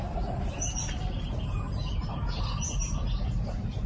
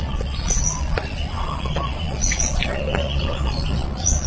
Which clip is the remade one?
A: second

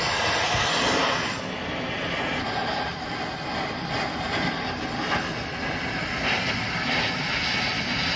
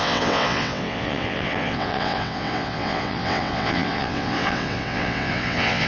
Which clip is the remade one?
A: second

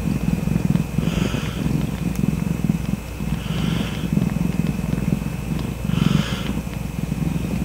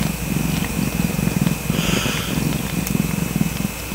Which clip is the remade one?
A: first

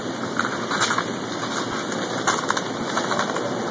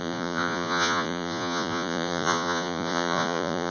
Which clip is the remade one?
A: second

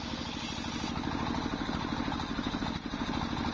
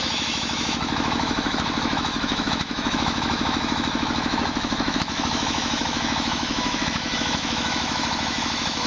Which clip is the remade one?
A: second